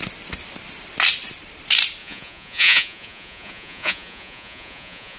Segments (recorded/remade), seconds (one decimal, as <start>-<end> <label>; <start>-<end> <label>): 0.0-2.0 recorded; 2.0-5.2 remade

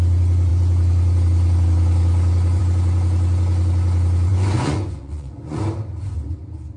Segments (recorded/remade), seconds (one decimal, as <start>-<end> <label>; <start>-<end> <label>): 0.0-4.3 recorded; 4.3-5.6 remade; 5.6-6.8 recorded

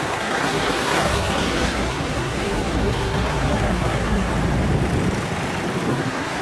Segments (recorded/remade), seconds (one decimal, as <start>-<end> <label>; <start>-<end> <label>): 0.0-4.3 remade; 4.3-5.9 recorded; 5.9-6.4 remade

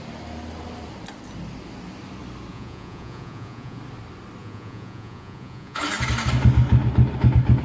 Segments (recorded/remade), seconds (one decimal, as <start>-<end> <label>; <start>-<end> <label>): 0.0-2.5 recorded; 2.5-3.8 remade; 3.8-4.4 recorded; 4.4-5.8 remade; 5.8-7.6 recorded